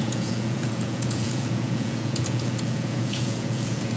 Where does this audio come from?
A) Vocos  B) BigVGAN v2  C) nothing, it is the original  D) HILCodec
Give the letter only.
A